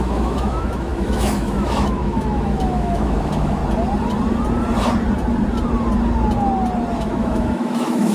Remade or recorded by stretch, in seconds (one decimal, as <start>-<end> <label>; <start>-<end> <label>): 0.0-3.6 remade; 3.6-7.0 recorded; 7.0-8.1 remade